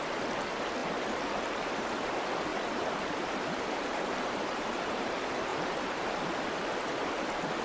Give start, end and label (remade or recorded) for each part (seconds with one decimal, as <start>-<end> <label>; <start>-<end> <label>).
0.0-0.8 recorded; 0.8-2.1 remade; 2.1-2.5 recorded; 2.5-5.1 remade; 5.1-5.5 recorded; 5.5-6.3 remade; 6.3-7.6 recorded